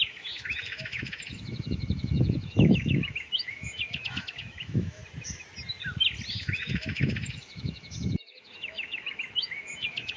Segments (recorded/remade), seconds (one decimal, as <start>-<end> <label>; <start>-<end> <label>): 0.0-5.0 remade; 5.0-6.3 recorded; 6.3-10.2 remade